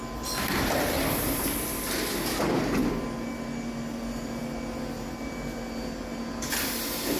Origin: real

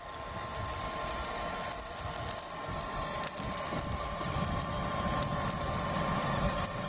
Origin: real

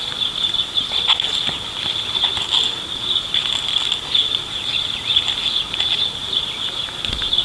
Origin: real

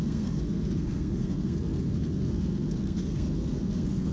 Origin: fake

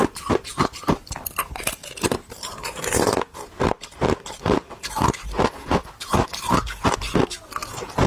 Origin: real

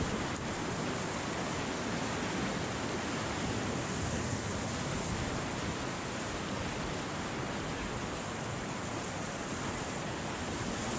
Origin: real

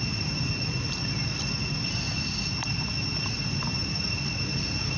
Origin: real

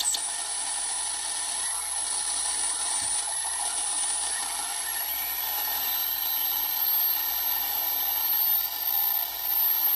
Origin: real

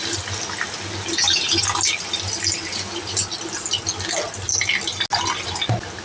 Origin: real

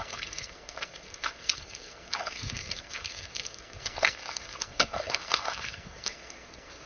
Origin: fake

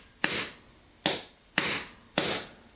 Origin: real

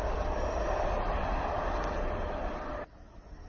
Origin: real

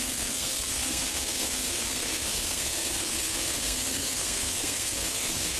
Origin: fake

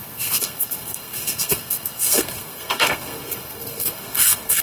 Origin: fake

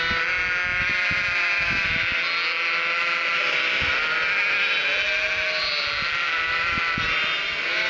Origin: real